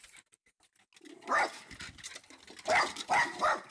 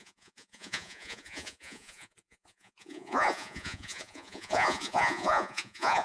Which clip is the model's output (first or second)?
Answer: second